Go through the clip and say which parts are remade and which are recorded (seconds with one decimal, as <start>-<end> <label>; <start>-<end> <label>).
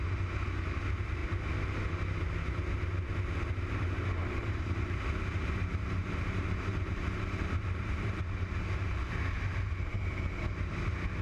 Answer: 0.0-4.2 recorded; 4.2-8.2 remade; 8.2-11.2 recorded